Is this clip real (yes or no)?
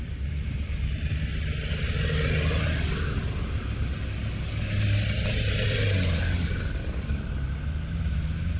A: yes